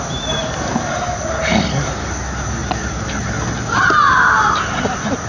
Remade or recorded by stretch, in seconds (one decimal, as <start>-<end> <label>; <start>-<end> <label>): 0.0-5.3 recorded